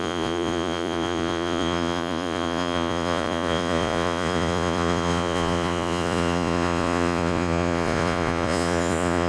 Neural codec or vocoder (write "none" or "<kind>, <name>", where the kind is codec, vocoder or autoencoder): vocoder, Vocos